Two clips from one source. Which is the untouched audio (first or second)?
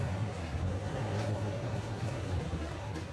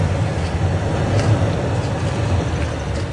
second